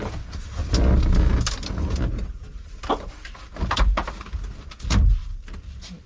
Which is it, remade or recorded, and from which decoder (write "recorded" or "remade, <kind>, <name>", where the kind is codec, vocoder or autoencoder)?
recorded